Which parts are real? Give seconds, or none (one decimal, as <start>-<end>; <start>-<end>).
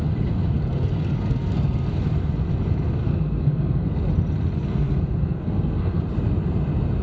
0.0-0.5; 1.9-3.0; 4.0-4.7; 6.0-7.0